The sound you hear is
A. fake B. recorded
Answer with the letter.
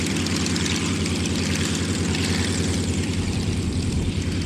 A